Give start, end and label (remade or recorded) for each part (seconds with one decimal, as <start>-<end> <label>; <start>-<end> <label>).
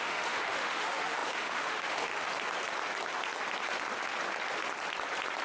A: 0.0-2.1 remade; 2.1-5.4 recorded